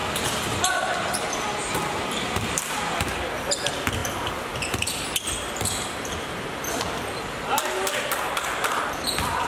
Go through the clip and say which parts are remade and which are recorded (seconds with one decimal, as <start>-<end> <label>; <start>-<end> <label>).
0.0-9.5 remade

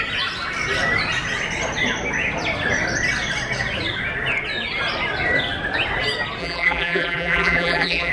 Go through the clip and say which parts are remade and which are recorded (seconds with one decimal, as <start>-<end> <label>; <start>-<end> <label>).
0.0-6.4 recorded; 6.4-8.1 remade

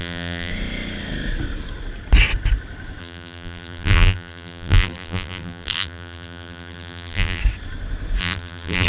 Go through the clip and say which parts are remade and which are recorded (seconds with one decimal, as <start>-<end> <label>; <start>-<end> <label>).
0.0-0.5 remade; 0.5-3.0 recorded; 3.0-7.4 remade; 7.4-8.2 recorded; 8.2-8.9 remade

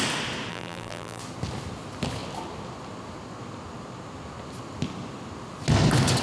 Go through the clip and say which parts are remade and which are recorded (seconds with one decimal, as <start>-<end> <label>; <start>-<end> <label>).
0.0-0.5 recorded; 0.5-1.2 remade; 1.2-6.2 recorded

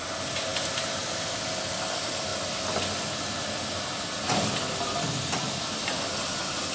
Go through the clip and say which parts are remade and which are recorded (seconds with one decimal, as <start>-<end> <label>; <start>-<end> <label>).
0.0-6.7 recorded

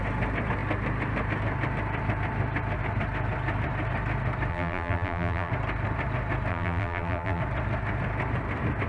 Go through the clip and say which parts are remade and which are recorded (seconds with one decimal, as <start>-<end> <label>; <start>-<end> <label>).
0.0-4.5 recorded; 4.5-5.5 remade; 5.5-6.5 recorded; 6.5-7.4 remade; 7.4-8.9 recorded

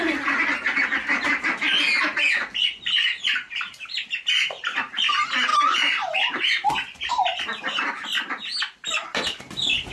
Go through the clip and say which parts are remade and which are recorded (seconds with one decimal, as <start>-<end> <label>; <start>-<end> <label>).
0.0-9.9 recorded